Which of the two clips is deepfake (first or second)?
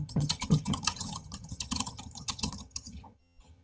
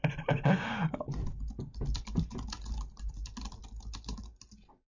first